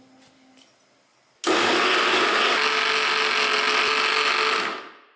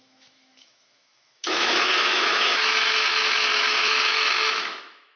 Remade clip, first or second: second